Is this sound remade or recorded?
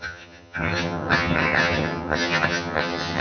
remade